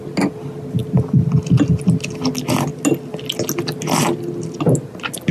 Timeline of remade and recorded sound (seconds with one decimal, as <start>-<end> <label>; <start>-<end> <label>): 0.0-5.3 recorded